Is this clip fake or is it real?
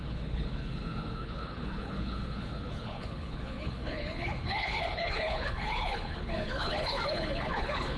fake